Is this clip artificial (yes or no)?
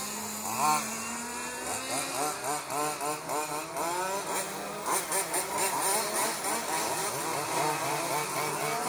no